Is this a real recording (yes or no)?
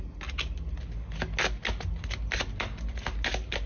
yes